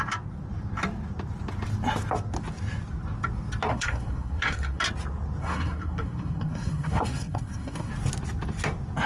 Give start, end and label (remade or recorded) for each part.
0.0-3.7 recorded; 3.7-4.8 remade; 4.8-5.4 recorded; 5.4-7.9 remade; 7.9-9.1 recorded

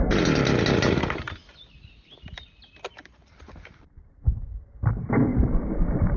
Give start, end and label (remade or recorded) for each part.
0.0-3.0 recorded; 3.0-4.5 remade; 4.5-5.3 recorded; 5.3-6.2 remade